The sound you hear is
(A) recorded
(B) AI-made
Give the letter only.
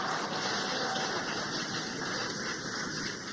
A